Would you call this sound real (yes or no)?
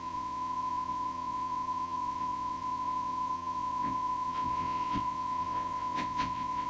no